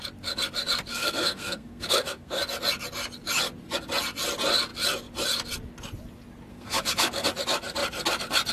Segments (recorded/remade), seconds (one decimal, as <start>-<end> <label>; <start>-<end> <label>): 0.0-0.9 recorded; 0.9-2.4 remade; 2.4-6.5 recorded; 6.5-7.3 remade; 7.3-8.5 recorded